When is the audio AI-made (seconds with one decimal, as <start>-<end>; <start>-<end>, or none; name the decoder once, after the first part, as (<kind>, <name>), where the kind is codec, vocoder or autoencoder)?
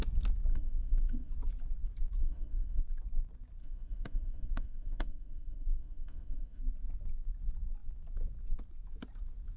0.5-1.3 (autoencoder, DAC-VAE); 2.2-2.8; 3.6-6.6